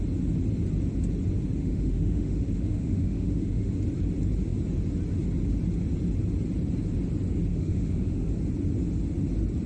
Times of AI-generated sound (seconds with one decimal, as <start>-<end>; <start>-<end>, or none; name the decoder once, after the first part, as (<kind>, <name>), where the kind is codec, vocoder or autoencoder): 1.6-3.7 (autoencoder, DAC-VAE); 7.5-8.3